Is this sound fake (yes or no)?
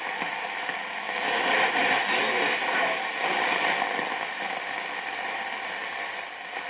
no